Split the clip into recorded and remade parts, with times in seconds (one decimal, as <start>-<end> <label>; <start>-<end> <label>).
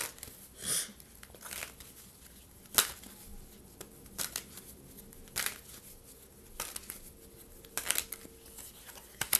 0.0-9.4 recorded